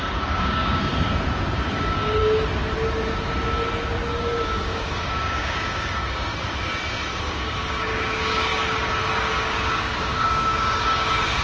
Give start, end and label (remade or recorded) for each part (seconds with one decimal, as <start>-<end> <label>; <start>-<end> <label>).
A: 0.0-0.9 remade; 0.9-1.7 recorded; 1.7-2.2 remade; 2.2-4.1 recorded; 4.1-6.3 remade; 6.3-7.2 recorded; 7.2-11.4 remade